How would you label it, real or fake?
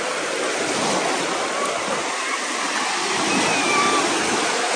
real